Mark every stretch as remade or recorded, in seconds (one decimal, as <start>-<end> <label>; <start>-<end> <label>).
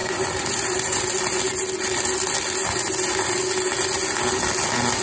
0.0-1.0 remade; 1.0-2.6 recorded; 2.6-3.3 remade; 3.3-5.0 recorded